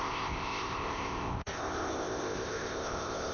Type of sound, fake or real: fake